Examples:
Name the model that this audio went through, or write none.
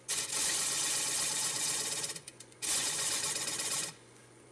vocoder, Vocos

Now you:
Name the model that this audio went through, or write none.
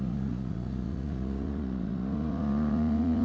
vocoder, Vocos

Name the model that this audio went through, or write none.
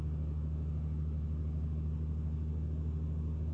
none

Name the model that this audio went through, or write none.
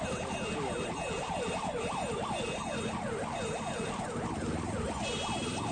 none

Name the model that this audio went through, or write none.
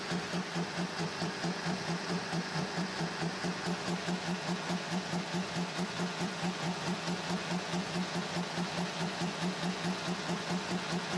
vocoder, Vocos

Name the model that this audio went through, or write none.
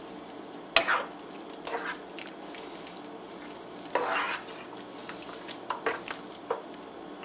none